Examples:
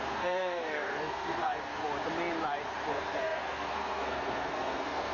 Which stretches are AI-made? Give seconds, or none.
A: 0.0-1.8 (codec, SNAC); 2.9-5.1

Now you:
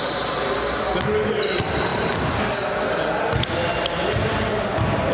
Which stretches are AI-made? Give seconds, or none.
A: none

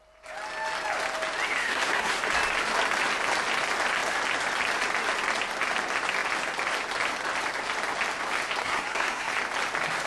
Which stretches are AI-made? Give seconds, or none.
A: 1.6-2.2 (codec, SNAC); 8.6-9.3